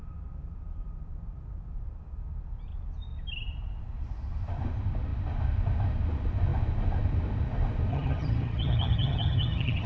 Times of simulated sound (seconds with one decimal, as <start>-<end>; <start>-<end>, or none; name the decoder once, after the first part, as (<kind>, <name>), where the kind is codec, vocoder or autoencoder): 7.9-9.9 (vocoder, HiFi-GAN)